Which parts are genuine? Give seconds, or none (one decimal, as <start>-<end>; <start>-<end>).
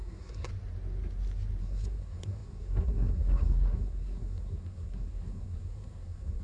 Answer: 0.5-1.6